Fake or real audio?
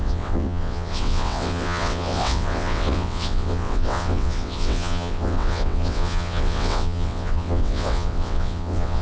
fake